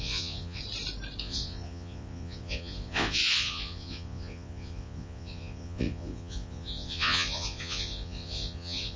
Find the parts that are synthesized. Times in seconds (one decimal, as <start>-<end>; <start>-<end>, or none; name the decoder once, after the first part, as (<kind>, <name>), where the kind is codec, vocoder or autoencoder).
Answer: 0.0-0.6 (vocoder, Vocos); 1.2-9.0